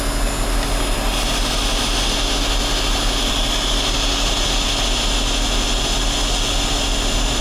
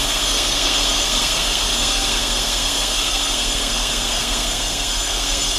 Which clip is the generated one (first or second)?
second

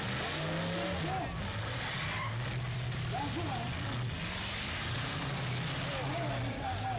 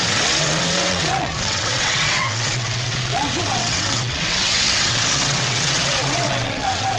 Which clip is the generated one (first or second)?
second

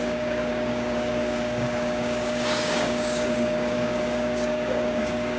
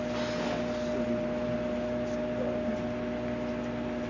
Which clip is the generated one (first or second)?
first